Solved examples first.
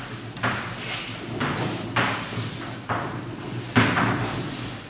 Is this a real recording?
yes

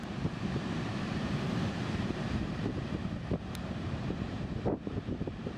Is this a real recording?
no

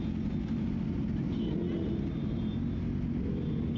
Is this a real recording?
yes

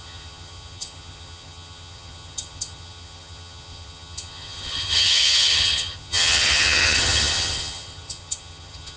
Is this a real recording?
no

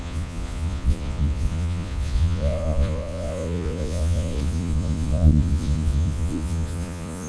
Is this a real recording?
no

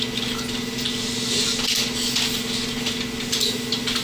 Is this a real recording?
yes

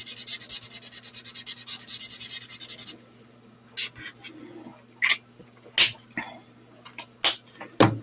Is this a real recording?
yes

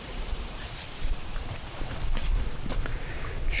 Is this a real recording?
no